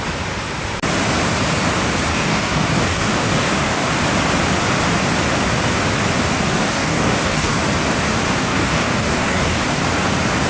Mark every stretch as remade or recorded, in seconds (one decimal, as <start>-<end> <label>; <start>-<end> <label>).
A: 0.0-2.1 recorded; 2.1-3.9 remade; 3.9-6.6 recorded; 6.6-7.6 remade; 7.6-8.4 recorded; 8.4-9.6 remade; 9.6-10.5 recorded